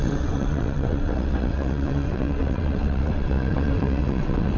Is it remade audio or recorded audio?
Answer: remade